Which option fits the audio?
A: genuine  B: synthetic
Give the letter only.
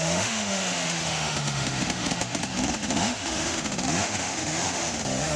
B